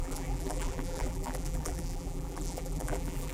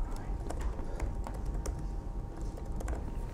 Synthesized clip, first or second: first